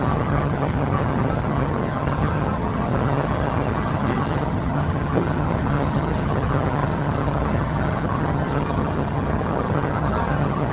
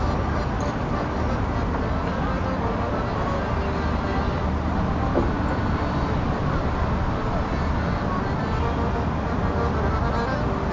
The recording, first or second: second